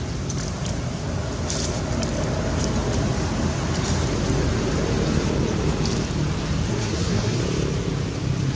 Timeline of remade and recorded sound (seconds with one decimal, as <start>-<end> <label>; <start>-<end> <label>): 0.0-6.7 recorded; 6.7-7.4 remade; 7.4-8.6 recorded